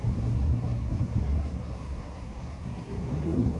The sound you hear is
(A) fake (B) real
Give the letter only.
A